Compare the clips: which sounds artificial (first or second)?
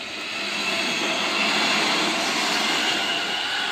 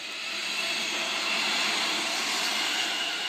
second